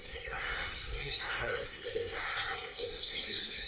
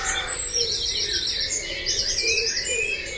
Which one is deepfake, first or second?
first